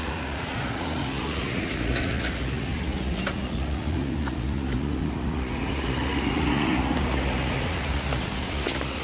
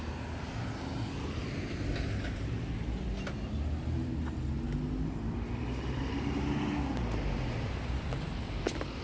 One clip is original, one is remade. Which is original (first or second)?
second